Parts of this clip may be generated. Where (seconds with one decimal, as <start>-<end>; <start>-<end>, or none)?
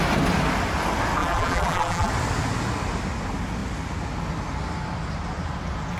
1.2-2.1